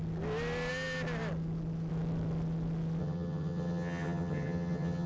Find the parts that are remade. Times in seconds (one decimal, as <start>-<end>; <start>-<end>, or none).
3.0-5.1

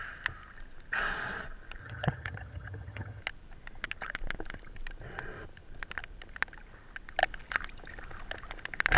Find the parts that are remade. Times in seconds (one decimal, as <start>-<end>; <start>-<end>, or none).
1.8-3.2